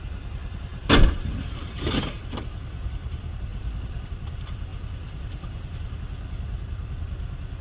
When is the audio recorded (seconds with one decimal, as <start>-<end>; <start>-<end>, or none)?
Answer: 0.0-3.5; 4.1-4.7; 5.9-7.6

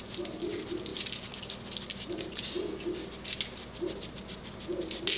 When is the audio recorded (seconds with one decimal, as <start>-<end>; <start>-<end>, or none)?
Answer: 0.0-5.2

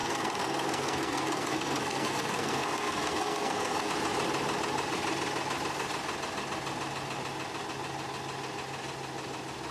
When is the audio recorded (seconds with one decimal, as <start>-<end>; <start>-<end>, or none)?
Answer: 3.9-9.7

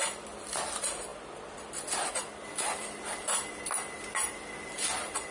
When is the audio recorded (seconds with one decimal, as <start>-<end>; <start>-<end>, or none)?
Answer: 0.0-5.3

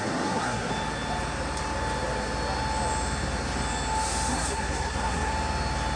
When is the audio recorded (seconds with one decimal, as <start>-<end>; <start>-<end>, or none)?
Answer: 0.7-4.3; 5.3-6.0

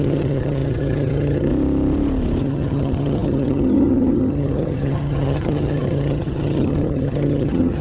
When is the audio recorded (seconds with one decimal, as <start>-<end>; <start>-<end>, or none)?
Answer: 1.5-2.4

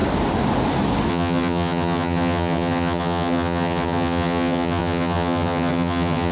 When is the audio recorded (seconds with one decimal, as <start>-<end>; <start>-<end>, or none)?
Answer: 0.0-1.1